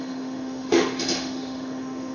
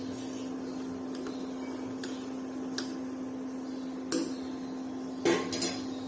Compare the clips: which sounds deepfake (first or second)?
first